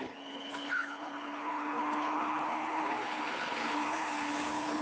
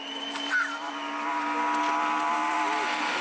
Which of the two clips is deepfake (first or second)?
first